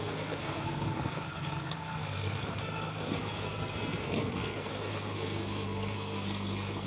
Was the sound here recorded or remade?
remade